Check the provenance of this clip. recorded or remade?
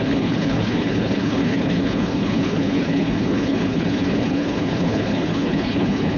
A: remade